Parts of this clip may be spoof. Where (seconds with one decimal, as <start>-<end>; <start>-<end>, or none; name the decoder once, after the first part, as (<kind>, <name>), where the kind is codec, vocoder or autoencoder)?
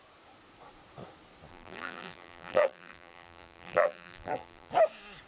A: 1.5-4.7 (vocoder, BigVGAN v2)